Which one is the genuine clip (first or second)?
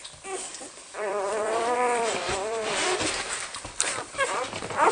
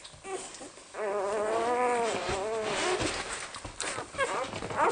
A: second